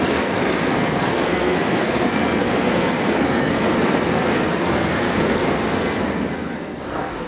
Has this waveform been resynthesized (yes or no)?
yes